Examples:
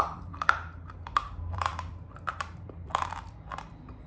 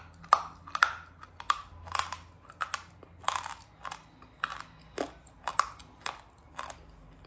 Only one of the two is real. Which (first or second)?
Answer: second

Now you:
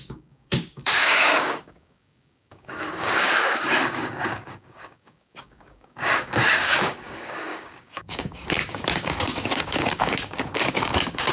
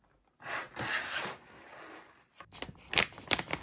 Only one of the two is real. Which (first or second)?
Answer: second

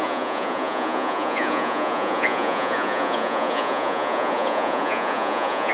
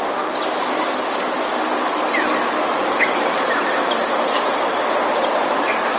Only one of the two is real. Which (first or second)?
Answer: second